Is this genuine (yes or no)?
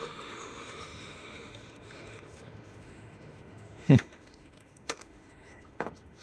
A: no